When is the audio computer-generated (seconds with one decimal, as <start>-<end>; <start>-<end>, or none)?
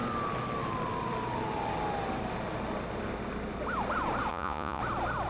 4.3-4.8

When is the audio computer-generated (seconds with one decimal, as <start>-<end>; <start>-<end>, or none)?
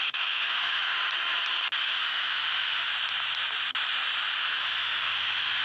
0.0-0.9; 1.8-2.9; 4.3-5.6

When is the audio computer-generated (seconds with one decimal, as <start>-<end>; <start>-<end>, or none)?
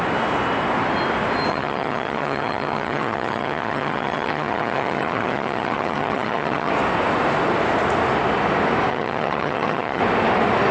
1.5-6.7; 8.9-10.0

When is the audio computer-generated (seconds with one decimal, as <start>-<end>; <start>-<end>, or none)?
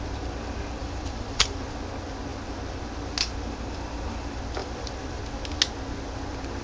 0.8-1.6; 4.6-5.2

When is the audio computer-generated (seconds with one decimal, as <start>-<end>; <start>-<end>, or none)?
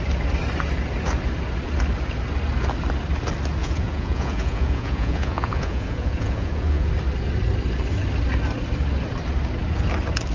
3.6-6.9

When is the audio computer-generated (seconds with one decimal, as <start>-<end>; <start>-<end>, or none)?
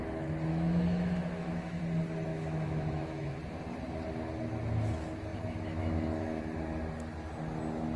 0.5-1.8; 2.3-3.4; 5.3-6.4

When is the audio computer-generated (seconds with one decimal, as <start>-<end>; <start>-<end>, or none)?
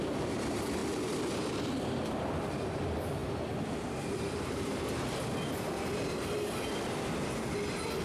0.0-0.8; 2.5-3.2; 3.8-8.0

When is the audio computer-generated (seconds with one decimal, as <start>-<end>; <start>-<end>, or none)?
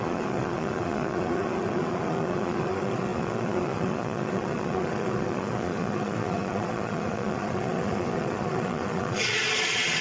0.0-10.0